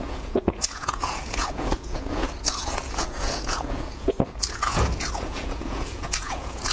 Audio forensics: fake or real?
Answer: fake